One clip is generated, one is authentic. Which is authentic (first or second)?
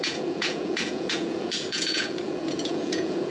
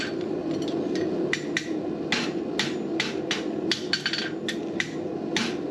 second